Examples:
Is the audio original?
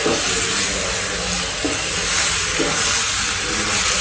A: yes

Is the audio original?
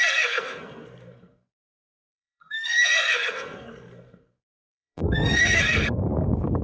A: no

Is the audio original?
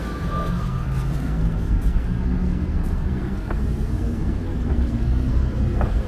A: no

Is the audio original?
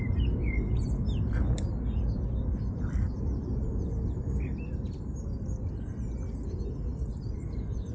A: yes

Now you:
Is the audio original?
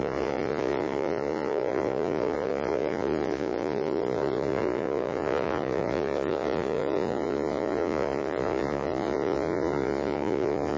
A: no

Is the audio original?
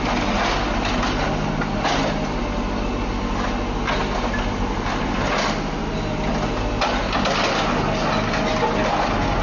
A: yes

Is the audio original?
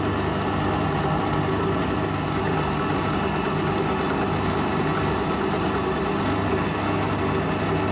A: yes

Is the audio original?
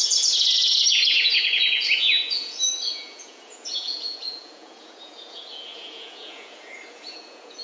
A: no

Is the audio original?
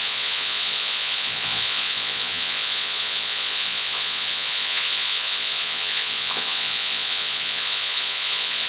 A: no